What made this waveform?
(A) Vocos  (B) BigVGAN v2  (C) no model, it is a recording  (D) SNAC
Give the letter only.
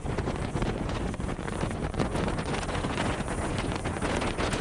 A